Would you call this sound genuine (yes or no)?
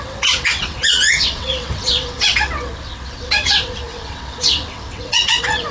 no